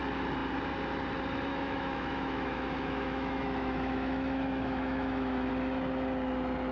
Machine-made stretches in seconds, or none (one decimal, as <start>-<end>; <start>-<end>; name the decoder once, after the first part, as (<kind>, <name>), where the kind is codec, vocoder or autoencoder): 1.5-5.5 (autoencoder, DAC-VAE)